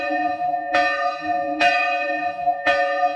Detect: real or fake fake